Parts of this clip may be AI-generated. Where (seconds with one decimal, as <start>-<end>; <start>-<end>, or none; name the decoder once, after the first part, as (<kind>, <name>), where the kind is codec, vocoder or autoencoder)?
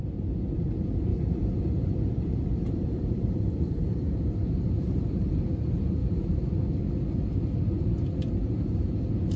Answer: 1.1-5.4 (vocoder, BigVGAN v2); 6.0-6.5; 8.4-8.9